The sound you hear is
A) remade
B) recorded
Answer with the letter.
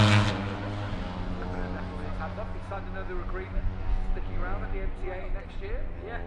B